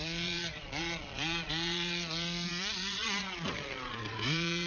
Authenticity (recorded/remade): remade